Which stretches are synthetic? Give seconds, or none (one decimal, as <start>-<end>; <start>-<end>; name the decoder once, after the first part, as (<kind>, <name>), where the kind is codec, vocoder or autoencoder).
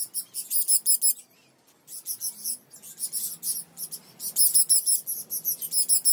none